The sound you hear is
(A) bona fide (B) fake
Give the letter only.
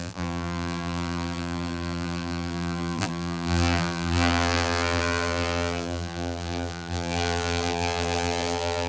B